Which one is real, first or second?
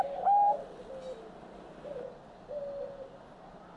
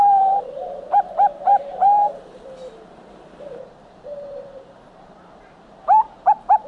first